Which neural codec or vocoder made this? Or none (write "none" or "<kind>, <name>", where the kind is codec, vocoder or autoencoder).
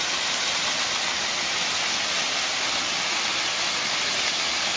none